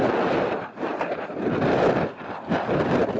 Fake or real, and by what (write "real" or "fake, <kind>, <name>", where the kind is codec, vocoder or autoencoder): real